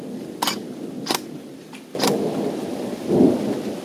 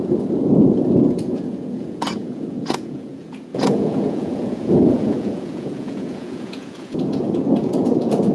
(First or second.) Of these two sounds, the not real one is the second